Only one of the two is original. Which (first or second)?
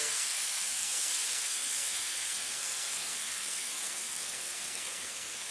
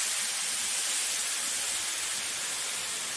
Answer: second